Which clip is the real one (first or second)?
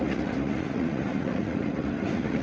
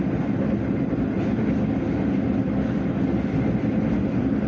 second